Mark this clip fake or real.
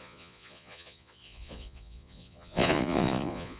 fake